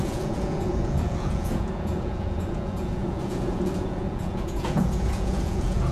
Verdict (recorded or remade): remade